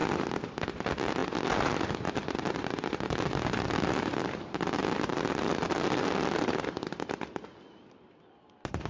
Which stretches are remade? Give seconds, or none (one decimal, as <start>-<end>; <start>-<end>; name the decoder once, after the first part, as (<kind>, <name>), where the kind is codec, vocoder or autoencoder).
none